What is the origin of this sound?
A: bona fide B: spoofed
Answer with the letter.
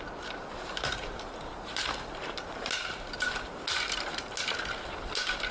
A